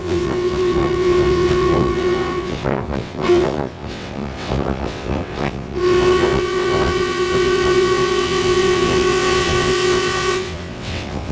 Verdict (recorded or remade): remade